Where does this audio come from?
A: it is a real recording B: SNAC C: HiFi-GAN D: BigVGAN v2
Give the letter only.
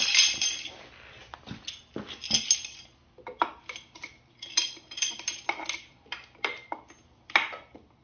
A